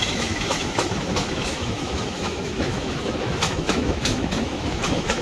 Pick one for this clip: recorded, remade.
remade